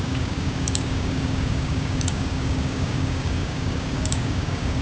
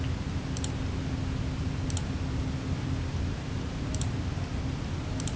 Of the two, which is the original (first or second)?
second